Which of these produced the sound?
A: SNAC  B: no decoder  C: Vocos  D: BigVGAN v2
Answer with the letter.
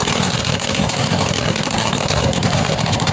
A